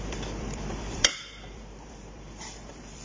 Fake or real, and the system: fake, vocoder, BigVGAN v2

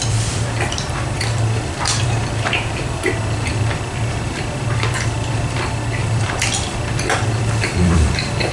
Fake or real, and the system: fake, vocoder, BigVGAN v2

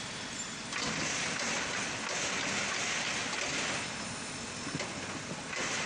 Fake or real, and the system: real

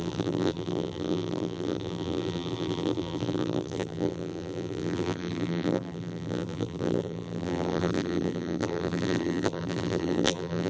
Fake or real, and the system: fake, vocoder, BigVGAN v2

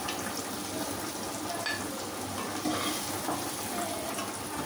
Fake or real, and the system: real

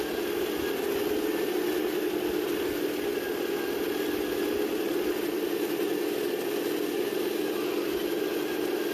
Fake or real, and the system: real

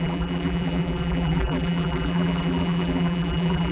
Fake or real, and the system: fake, vocoder, BigVGAN v2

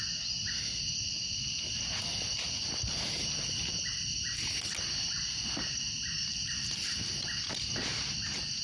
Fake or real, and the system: real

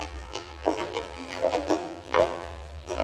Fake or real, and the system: fake, vocoder, BigVGAN v2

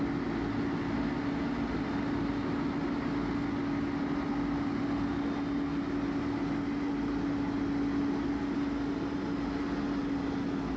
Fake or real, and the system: real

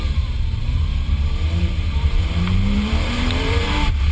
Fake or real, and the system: fake, vocoder, BigVGAN v2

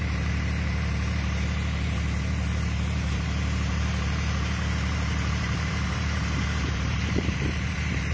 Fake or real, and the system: fake, vocoder, BigVGAN v2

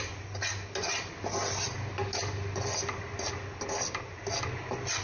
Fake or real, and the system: real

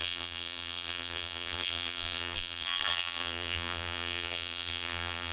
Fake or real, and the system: fake, vocoder, BigVGAN v2